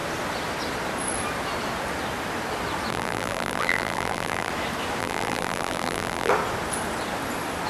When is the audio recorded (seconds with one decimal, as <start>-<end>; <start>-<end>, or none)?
0.0-2.9; 4.5-5.0; 6.3-7.7